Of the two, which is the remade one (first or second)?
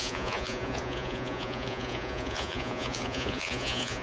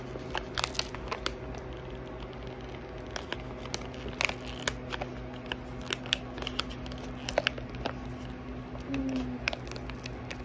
first